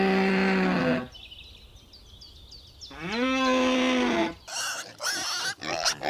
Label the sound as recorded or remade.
recorded